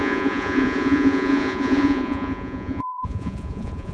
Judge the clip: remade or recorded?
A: remade